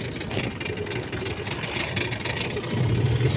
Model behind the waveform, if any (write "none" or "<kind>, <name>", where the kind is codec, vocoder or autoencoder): none